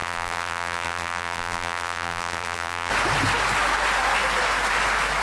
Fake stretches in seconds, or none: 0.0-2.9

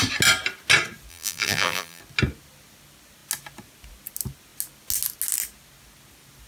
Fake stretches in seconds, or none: 1.1-2.0

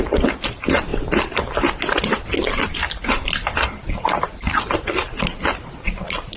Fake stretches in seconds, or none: 0.9-4.7

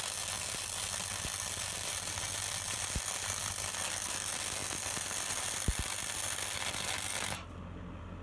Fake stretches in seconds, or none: none